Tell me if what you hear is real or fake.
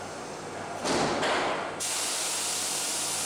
real